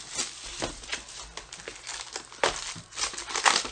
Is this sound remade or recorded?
recorded